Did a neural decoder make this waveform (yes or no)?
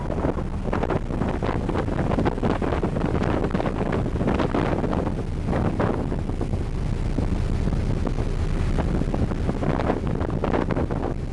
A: no